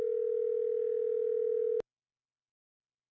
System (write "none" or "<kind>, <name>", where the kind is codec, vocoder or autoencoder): none